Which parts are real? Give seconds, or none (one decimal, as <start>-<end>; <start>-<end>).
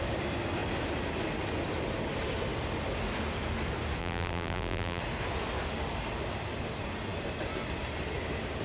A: 0.0-4.0; 5.0-8.6